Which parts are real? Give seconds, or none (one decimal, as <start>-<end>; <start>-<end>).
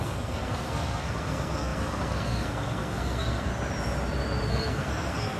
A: 3.5-4.5